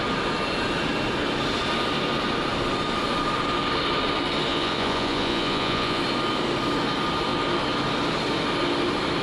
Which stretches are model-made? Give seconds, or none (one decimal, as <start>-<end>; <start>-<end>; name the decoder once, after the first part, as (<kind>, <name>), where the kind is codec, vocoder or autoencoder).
4.5-6.0 (vocoder, Vocos)